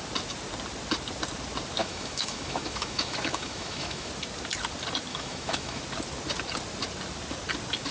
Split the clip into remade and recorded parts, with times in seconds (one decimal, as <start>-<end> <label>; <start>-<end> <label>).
0.0-1.8 recorded; 1.8-4.1 remade; 4.1-5.1 recorded; 5.1-5.8 remade; 5.8-7.9 recorded